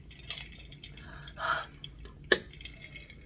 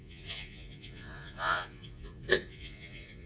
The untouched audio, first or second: first